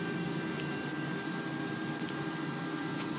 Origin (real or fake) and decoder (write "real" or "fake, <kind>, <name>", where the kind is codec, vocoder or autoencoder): real